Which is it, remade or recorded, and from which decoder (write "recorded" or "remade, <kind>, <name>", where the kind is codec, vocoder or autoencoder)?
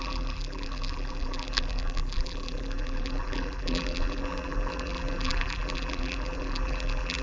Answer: remade, vocoder, BigVGAN v2